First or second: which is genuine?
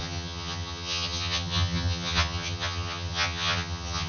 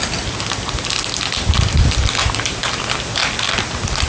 second